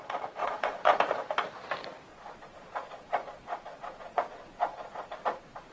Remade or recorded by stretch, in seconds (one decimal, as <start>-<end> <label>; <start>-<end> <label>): 0.0-0.4 recorded; 0.4-1.0 remade; 1.0-2.1 recorded; 2.1-5.7 remade